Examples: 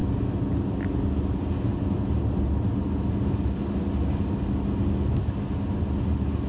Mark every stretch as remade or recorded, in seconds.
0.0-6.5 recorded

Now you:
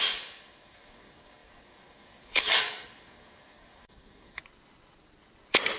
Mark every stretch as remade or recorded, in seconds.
0.0-4.4 remade; 4.4-5.8 recorded

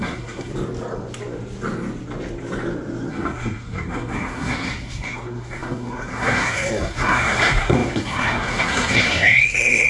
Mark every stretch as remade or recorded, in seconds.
0.0-0.5 remade; 0.5-3.1 recorded; 3.1-9.9 remade